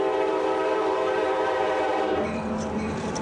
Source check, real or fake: fake